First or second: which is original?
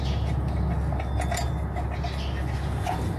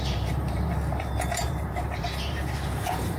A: first